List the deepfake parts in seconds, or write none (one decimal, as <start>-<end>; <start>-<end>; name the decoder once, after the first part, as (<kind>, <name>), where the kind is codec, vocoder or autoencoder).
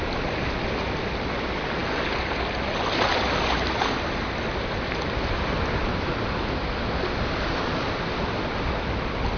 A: none